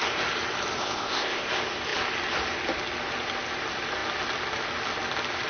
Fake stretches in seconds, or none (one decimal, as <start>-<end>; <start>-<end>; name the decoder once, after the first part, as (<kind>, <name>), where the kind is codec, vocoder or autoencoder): 0.8-1.5 (codec, ZipCodec)